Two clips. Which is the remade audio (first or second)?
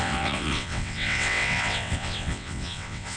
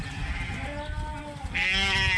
first